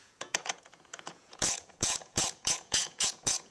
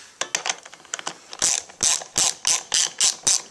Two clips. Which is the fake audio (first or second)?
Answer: first